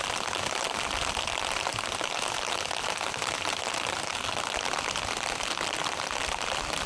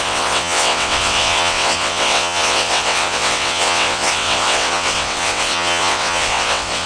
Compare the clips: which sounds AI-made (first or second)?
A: second